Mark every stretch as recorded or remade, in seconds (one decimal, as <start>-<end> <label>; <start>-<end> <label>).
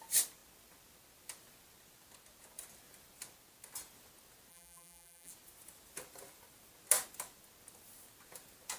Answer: 0.0-4.5 recorded; 4.5-5.3 remade; 5.3-8.8 recorded